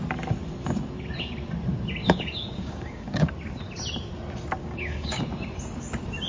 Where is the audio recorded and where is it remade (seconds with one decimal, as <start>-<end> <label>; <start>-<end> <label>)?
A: 0.0-2.0 recorded; 2.0-3.3 remade; 3.3-4.6 recorded; 4.6-5.2 remade; 5.2-6.3 recorded